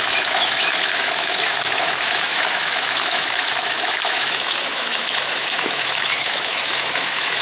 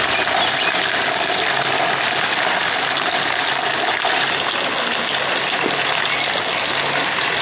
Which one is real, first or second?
second